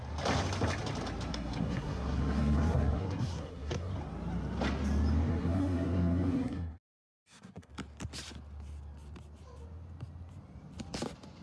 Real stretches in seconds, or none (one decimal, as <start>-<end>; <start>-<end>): 0.0-1.3; 3.9-5.3; 7.7-11.4

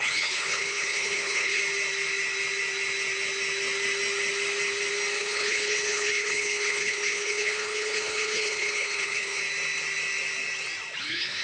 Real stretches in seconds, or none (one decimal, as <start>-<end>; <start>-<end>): 1.6-5.2; 9.4-11.0